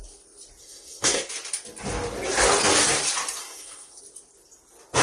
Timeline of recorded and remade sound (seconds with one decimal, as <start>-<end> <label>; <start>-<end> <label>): 0.0-0.6 recorded; 0.6-1.3 remade; 1.3-3.4 recorded; 3.4-4.0 remade; 4.0-5.0 recorded